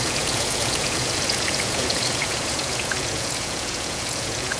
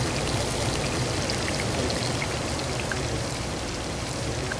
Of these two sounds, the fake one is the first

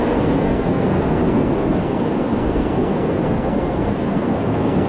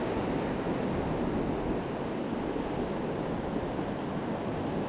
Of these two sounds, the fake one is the first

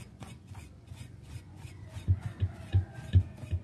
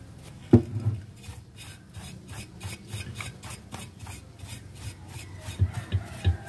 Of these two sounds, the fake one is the first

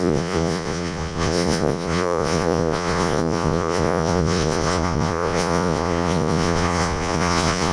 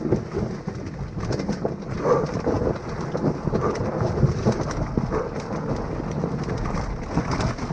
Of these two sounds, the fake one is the first